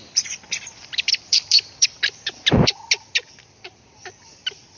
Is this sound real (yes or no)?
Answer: no